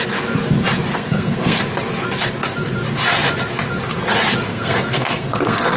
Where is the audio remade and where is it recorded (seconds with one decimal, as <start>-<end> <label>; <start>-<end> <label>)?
0.0-0.9 recorded; 0.9-1.6 remade; 1.6-4.5 recorded; 4.5-5.8 remade